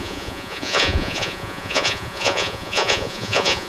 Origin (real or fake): fake